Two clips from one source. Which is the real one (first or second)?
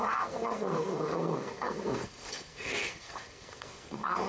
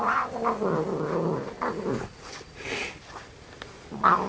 second